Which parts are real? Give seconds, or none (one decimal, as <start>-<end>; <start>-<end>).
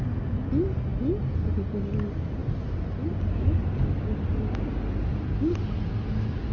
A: 0.0-6.5